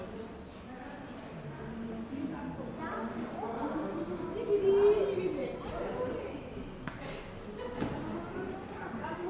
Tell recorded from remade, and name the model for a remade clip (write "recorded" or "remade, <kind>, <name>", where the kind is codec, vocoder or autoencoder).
recorded